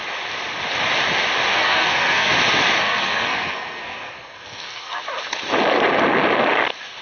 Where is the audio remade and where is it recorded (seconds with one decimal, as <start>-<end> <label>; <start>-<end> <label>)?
0.0-1.5 recorded; 1.5-2.3 remade; 2.3-2.8 recorded; 2.8-5.0 remade; 5.0-7.0 recorded